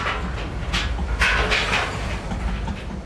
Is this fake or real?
real